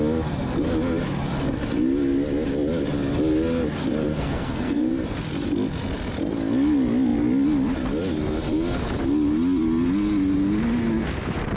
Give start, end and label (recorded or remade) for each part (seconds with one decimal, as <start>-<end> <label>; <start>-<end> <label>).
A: 0.0-4.1 recorded; 4.1-4.9 remade; 4.9-11.6 recorded